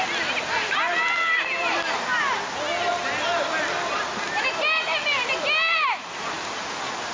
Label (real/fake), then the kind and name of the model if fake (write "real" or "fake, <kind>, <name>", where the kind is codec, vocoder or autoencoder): real